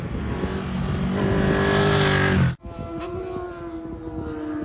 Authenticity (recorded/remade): recorded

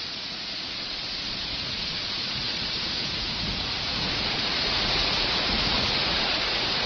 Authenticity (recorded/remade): remade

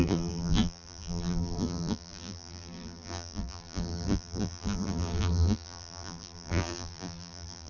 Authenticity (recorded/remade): remade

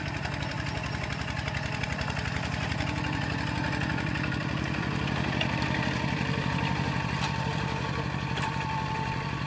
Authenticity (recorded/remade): remade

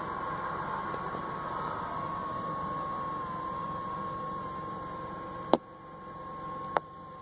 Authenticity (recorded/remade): recorded